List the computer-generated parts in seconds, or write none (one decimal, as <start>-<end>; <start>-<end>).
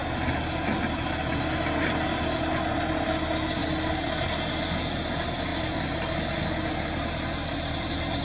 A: none